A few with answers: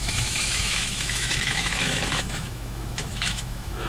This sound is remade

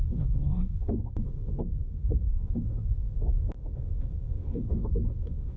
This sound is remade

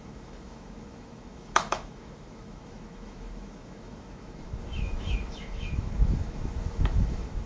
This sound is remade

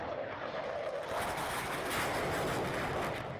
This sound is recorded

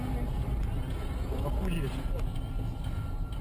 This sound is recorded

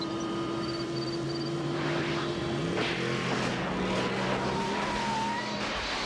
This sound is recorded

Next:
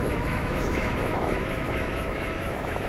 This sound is remade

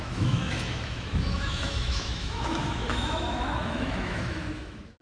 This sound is remade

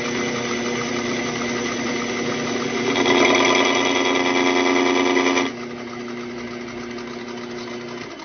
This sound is recorded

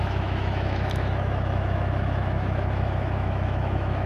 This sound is remade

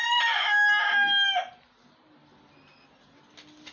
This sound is recorded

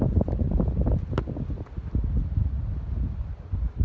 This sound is recorded